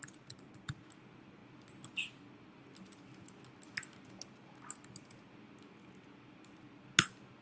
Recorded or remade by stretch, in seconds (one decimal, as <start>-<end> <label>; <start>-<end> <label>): 0.0-7.4 recorded